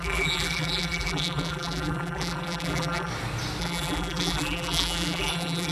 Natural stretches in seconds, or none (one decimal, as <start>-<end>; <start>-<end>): 3.1-3.6